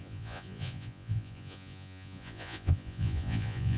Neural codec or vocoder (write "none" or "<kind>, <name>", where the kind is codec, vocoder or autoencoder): vocoder, Vocos